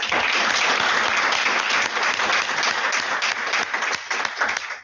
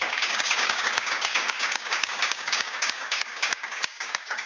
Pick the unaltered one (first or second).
first